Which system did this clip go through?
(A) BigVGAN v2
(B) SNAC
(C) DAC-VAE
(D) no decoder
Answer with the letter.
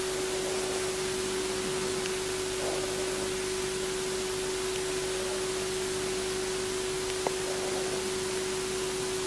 D